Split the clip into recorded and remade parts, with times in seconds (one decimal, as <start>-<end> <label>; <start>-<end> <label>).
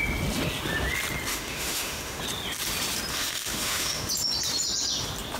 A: 0.0-1.3 recorded; 1.3-2.2 remade; 2.2-3.1 recorded; 3.1-4.1 remade; 4.1-5.4 recorded